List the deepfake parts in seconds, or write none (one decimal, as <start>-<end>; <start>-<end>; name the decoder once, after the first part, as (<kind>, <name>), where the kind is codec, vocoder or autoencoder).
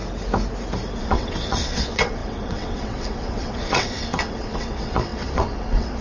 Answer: 1.0-6.0 (vocoder, WaveNeXt)